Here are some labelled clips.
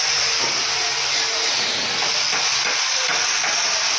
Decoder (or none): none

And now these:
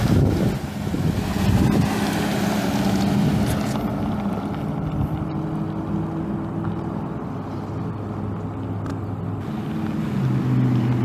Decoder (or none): none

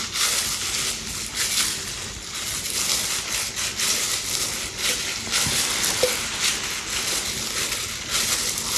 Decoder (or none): none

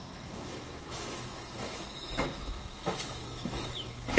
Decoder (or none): autoencoder, DAC-VAE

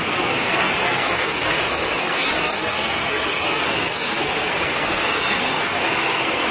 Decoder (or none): codec, SNAC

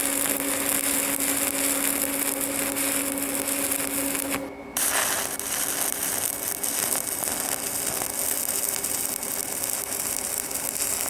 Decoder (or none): none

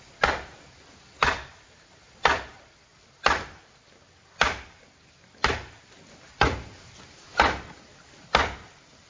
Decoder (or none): none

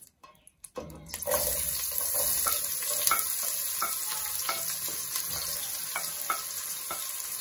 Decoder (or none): none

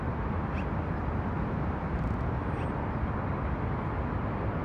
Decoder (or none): none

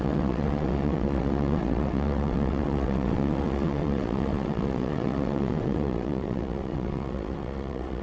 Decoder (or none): vocoder, WaveNeXt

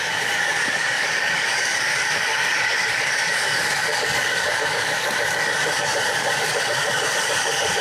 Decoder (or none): codec, DAC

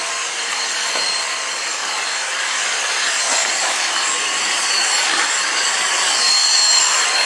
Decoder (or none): codec, DAC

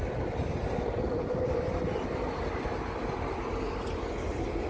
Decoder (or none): none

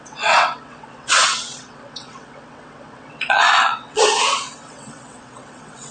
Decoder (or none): vocoder, WaveNeXt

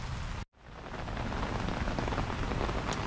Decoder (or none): none